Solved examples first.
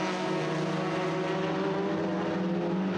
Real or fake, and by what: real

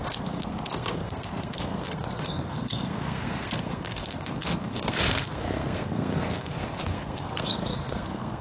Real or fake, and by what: fake, codec, SNAC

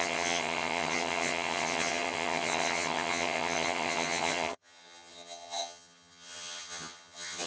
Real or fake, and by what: fake, vocoder, HiFi-GAN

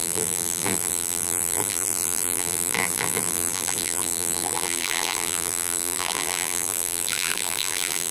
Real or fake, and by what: fake, vocoder, BigVGAN v2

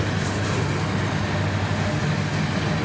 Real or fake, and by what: real